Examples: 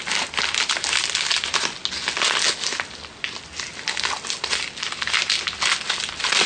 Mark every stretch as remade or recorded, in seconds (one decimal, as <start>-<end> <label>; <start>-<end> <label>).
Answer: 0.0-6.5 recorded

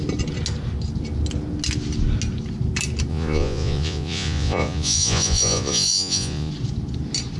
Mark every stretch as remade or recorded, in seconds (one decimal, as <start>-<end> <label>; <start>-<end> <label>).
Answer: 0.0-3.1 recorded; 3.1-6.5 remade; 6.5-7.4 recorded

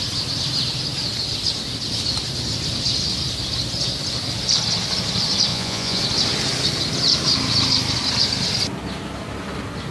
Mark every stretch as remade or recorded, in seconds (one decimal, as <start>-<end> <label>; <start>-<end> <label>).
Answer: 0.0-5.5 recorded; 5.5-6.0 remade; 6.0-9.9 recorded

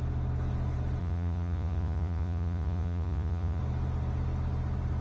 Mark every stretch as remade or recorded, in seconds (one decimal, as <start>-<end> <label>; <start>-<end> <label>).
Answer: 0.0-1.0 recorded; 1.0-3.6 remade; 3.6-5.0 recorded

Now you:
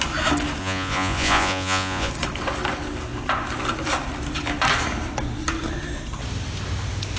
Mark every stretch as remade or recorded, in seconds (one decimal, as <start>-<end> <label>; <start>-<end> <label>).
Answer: 0.0-0.6 recorded; 0.6-2.1 remade; 2.1-7.2 recorded

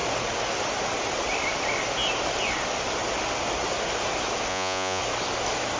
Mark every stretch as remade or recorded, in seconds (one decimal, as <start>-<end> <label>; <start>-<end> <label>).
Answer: 0.0-4.5 recorded; 4.5-5.0 remade; 5.0-5.8 recorded